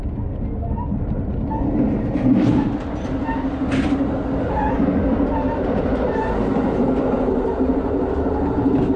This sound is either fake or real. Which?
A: real